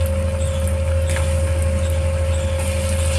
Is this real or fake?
real